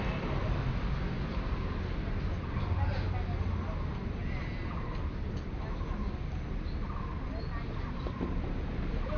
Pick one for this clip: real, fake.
real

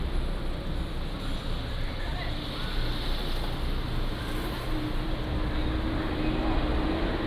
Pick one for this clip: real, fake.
real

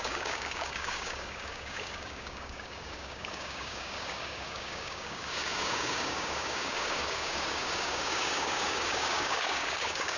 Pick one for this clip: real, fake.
fake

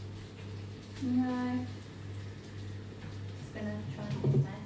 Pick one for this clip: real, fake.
real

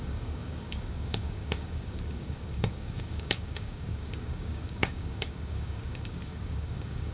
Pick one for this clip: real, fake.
fake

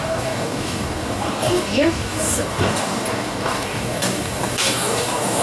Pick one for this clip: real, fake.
fake